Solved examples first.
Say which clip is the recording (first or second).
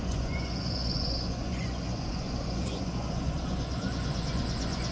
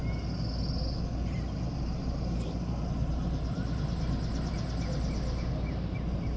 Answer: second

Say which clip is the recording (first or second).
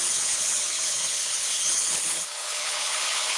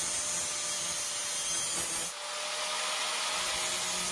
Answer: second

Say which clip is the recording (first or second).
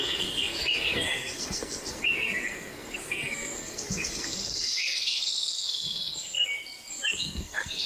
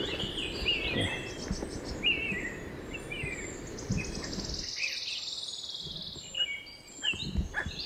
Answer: second